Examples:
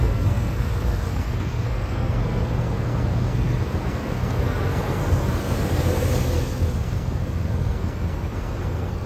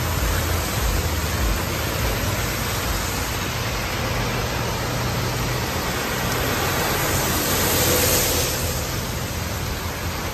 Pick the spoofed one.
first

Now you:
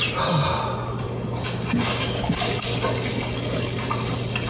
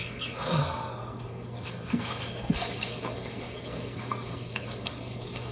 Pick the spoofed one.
second